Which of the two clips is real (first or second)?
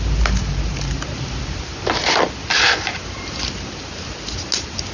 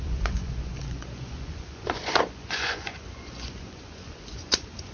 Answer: first